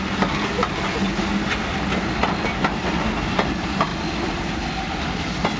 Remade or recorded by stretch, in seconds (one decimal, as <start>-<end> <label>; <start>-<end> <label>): 0.0-5.6 recorded